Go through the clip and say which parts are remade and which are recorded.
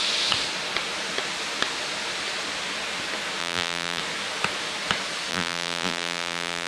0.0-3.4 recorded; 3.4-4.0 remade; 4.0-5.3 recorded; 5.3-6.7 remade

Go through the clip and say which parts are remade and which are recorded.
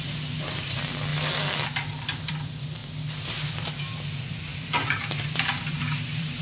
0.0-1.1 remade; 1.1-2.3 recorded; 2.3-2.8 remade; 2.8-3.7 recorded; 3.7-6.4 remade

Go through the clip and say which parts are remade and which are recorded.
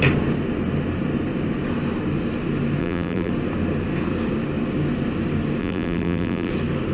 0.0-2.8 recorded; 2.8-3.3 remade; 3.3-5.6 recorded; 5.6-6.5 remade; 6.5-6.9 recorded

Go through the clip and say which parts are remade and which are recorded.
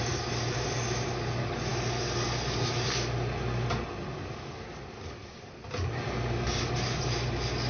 0.0-7.7 recorded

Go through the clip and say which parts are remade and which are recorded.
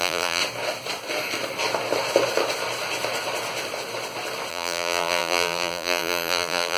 0.0-0.4 remade; 0.4-4.5 recorded; 4.5-6.8 remade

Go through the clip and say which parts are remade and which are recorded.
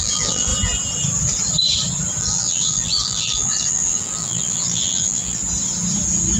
0.0-0.5 remade; 0.5-2.2 recorded; 2.2-5.4 remade; 5.4-6.4 recorded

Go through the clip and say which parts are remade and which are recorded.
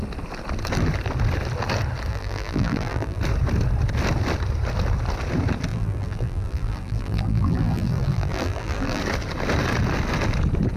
0.0-2.1 recorded; 2.1-3.2 remade; 3.2-5.7 recorded; 5.7-9.0 remade; 9.0-10.8 recorded